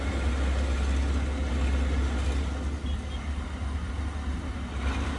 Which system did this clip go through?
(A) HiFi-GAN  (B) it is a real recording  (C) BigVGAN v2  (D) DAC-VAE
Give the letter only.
B